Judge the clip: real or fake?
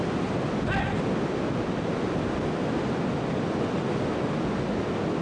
real